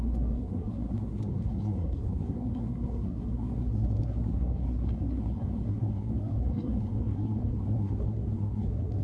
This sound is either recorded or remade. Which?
remade